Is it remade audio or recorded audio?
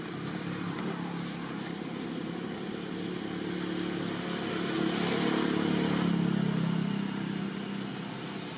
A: recorded